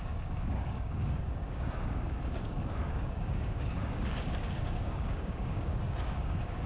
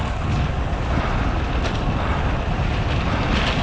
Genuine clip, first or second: second